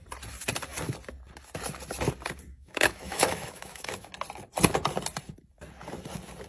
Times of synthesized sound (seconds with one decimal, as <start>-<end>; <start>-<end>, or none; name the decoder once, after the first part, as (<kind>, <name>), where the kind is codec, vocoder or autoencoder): 2.5-4.1 (autoencoder, DAC-VAE)